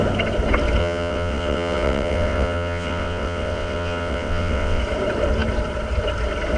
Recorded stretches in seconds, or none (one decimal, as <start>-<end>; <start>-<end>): 0.0-0.8; 4.8-6.6